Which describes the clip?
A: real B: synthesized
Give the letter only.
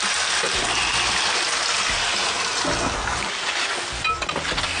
A